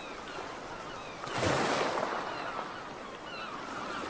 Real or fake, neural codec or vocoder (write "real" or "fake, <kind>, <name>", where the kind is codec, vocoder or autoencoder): real